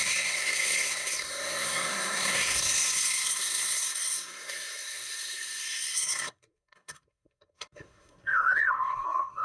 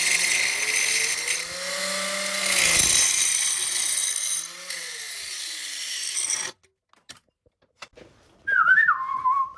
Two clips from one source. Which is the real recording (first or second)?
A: second